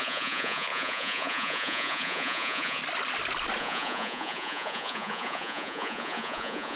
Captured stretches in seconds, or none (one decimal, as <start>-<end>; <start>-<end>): 2.8-3.6